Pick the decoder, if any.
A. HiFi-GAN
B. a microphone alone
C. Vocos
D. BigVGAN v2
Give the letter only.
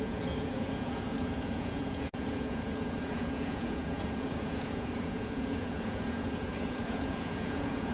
C